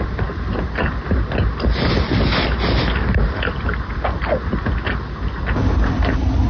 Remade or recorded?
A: recorded